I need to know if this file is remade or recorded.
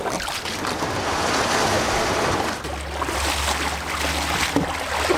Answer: recorded